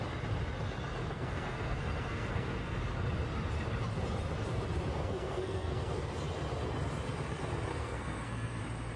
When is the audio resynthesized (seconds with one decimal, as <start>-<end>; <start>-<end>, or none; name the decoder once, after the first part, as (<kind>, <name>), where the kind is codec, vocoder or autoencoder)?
1.0-2.8 (codec, SNAC); 4.9-6.1; 7.7-8.6